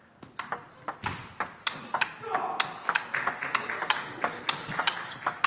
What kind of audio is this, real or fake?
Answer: real